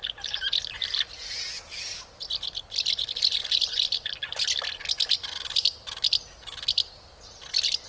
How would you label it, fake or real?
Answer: fake